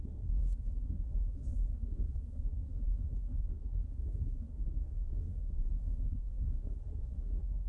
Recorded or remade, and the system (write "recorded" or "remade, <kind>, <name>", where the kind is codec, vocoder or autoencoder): remade, codec, SNAC